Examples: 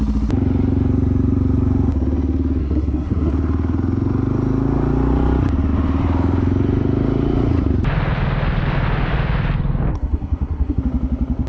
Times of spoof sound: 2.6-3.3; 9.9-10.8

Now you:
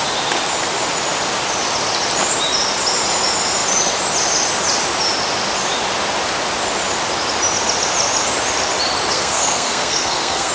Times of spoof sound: 9.1-10.5

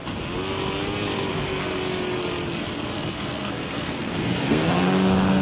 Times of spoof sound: 1.3-1.8; 2.9-5.4